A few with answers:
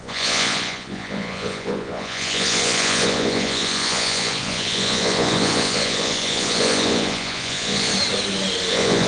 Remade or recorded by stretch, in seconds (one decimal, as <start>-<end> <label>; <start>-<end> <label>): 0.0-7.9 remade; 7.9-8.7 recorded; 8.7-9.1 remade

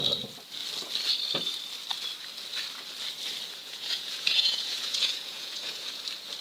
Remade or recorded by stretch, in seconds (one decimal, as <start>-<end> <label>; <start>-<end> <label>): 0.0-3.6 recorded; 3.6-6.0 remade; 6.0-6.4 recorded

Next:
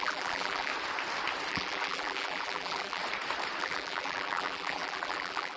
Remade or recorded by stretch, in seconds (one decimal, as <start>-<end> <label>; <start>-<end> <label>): 0.0-0.7 remade; 0.7-1.5 recorded; 1.5-3.0 remade; 3.0-3.6 recorded; 3.6-5.6 remade

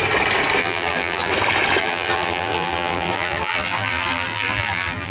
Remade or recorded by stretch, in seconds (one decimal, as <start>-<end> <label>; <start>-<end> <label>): 0.0-0.6 recorded; 0.6-1.3 remade; 1.3-1.8 recorded; 1.8-5.1 remade

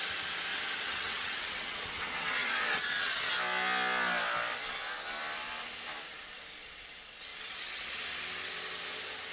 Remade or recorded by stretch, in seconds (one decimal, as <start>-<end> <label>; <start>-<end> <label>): 0.0-0.5 recorded; 0.5-3.3 remade; 3.3-7.3 recorded; 7.3-8.2 remade; 8.2-9.3 recorded